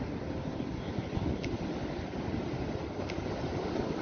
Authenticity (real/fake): real